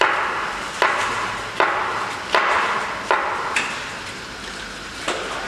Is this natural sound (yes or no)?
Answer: yes